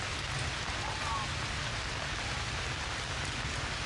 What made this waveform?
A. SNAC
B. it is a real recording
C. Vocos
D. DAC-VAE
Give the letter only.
B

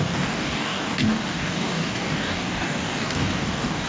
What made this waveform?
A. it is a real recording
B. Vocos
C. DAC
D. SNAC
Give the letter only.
C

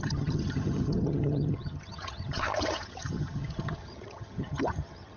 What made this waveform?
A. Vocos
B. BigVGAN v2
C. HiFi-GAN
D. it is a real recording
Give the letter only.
C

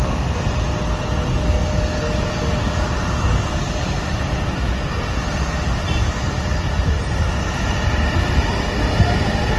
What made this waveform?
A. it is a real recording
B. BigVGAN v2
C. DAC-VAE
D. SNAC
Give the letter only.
A